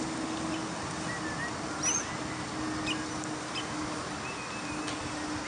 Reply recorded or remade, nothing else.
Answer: recorded